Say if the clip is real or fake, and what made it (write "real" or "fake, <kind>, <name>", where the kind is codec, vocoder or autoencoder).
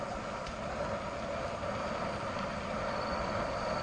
real